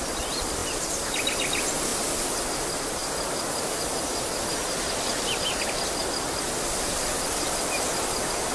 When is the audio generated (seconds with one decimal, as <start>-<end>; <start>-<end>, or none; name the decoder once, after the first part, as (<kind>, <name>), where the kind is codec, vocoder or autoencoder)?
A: none